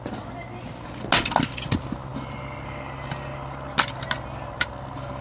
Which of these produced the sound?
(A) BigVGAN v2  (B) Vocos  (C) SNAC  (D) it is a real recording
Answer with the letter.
D